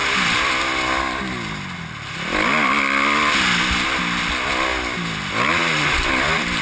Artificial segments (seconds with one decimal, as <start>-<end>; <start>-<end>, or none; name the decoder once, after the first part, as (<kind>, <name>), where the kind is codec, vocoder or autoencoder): none